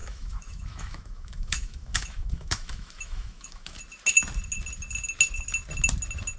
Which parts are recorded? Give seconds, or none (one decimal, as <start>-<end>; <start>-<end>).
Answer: 3.8-6.4